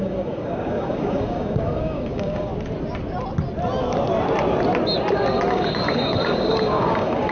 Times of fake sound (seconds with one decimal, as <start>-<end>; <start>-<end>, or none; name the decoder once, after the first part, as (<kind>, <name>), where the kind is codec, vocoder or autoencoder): 0.0-2.5 (codec, DAC); 5.5-7.3

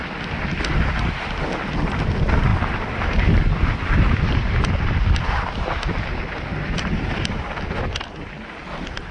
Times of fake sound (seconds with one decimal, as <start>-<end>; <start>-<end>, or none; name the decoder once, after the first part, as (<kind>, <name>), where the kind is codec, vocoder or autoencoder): 2.5-5.5 (vocoder, BigVGAN v2); 6.5-7.3